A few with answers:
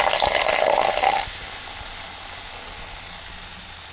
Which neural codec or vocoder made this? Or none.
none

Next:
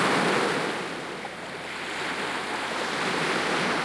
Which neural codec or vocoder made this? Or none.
none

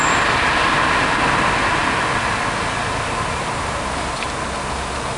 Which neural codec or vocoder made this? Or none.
none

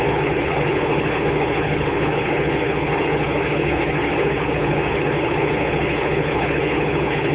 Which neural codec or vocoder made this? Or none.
codec, HILCodec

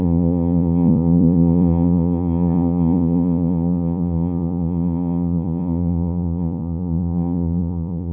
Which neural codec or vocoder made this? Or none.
vocoder, Vocos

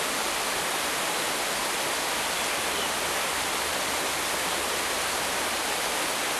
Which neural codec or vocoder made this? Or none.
none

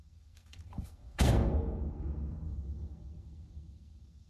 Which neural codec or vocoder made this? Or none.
codec, SNAC